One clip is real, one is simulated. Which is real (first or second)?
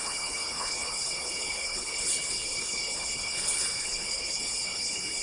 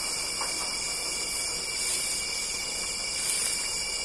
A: second